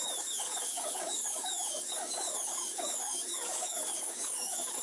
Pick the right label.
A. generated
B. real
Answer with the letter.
A